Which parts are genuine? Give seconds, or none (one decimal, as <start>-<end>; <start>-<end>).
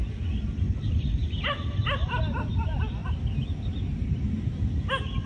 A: 1.2-2.5; 3.0-5.3